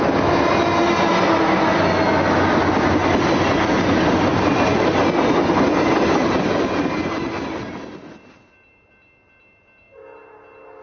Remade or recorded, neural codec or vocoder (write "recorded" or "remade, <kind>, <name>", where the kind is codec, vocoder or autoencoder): recorded